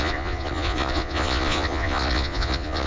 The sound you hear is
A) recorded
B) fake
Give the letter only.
B